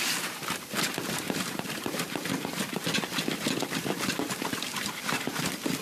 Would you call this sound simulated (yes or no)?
no